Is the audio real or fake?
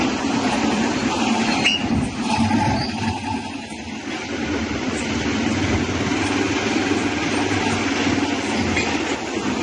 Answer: real